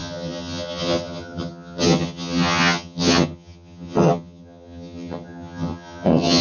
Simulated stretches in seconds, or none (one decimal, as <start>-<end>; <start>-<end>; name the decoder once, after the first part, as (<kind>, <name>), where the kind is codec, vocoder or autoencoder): 0.0-6.4 (vocoder, HiFi-GAN)